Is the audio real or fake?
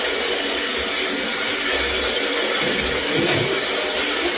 real